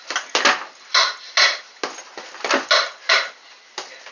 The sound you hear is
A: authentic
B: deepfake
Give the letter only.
A